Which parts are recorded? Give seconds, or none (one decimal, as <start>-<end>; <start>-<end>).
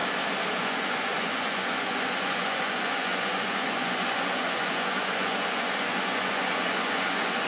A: 0.0-0.6